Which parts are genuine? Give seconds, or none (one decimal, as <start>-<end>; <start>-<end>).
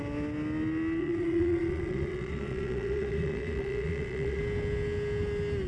0.0-1.0; 4.4-5.7